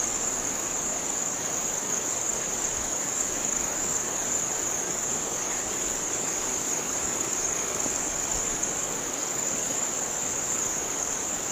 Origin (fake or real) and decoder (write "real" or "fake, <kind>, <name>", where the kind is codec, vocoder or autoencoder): fake, codec, DAC